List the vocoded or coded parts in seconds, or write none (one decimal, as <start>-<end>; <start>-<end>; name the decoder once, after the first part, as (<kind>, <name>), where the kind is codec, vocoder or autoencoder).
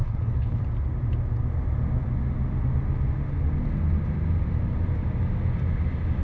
0.0-0.6 (codec, HILCodec)